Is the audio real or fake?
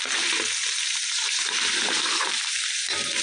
fake